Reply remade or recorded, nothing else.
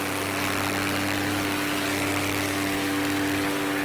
recorded